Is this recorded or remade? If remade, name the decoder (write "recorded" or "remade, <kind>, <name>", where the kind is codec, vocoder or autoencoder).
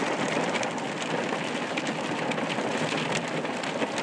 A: recorded